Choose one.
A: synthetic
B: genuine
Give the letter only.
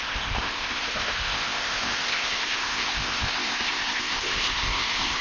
A